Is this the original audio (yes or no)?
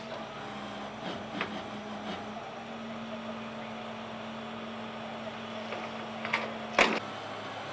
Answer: yes